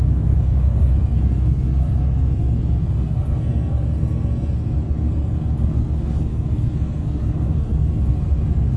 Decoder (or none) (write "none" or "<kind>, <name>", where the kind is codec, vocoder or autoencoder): codec, SNAC